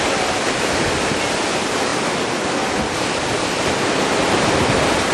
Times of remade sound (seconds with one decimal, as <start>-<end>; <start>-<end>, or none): none